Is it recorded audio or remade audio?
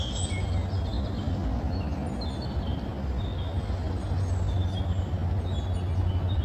recorded